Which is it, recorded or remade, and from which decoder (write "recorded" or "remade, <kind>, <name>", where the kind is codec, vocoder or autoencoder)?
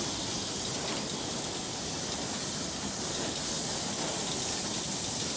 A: recorded